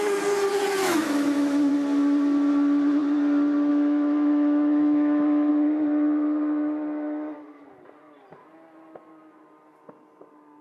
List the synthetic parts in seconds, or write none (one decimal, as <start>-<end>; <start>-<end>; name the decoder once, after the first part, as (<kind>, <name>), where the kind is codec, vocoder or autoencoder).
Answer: 0.8-1.7 (autoencoder, DAC-VAE); 3.7-5.5

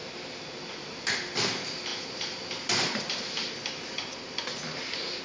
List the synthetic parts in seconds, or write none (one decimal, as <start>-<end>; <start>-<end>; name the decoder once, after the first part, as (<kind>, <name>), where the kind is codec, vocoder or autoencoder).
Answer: none

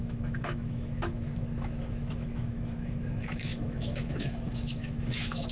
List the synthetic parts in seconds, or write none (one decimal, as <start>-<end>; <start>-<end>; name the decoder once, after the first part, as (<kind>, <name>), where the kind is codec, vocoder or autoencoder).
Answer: 0.0-5.5 (autoencoder, DAC-VAE)

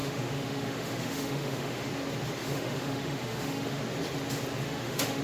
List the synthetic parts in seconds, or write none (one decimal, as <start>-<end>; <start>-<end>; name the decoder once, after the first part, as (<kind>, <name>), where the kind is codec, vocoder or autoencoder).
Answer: 0.0-1.9 (autoencoder, DAC-VAE); 2.4-3.8; 4.6-5.2

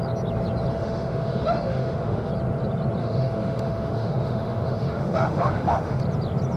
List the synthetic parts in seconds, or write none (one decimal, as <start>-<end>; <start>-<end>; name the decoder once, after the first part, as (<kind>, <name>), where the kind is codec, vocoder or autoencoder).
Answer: 0.7-2.3 (autoencoder, DAC-VAE); 3.0-6.0

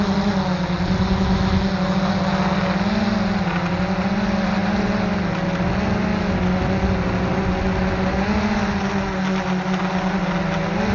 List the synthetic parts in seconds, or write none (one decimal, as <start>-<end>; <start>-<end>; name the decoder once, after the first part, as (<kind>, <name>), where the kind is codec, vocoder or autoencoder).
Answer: none